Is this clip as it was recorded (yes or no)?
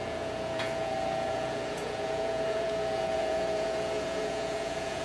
no